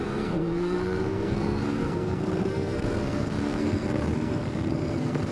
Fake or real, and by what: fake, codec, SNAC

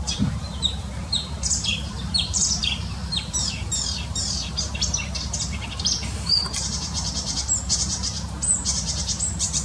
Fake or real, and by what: fake, vocoder, BigVGAN v2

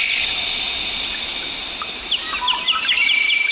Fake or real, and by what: real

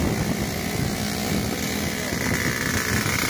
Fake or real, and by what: real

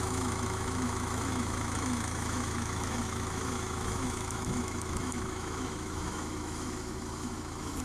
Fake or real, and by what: fake, autoencoder, DAC-VAE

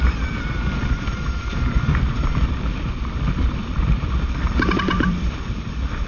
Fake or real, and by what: fake, vocoder, BigVGAN v2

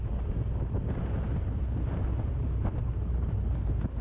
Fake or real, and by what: real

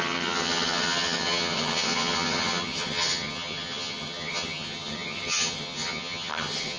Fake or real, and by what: fake, vocoder, HiFi-GAN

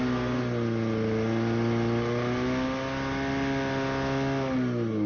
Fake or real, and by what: real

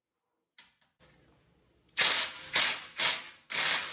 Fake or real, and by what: real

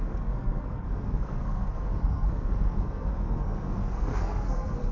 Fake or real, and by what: fake, codec, SNAC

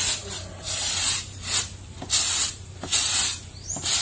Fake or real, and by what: real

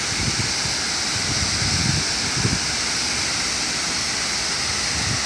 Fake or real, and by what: real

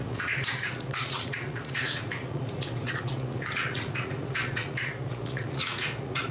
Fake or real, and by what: fake, vocoder, Vocos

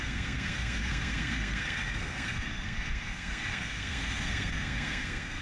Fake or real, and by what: fake, codec, SNAC